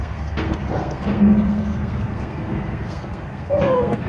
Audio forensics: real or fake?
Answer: fake